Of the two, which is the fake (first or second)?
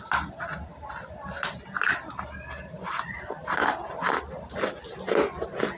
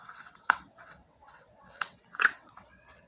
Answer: second